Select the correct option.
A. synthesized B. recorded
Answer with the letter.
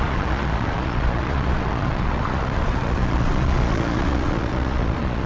A